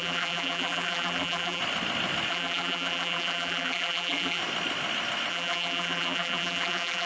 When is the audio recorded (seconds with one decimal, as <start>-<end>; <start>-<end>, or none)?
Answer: 1.6-2.3; 4.4-5.3